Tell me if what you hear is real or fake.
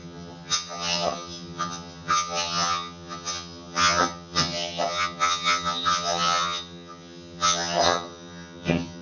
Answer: fake